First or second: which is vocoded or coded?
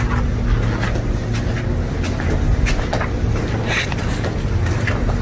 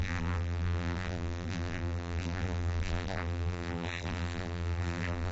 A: second